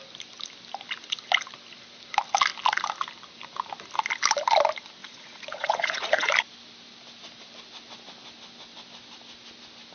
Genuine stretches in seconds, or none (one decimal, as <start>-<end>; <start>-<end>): 0.0-5.0; 6.3-9.9